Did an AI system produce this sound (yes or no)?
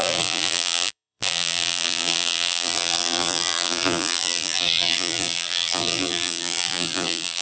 yes